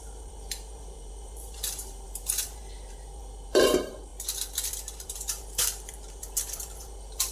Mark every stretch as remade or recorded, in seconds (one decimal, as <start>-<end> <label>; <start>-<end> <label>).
0.0-7.3 remade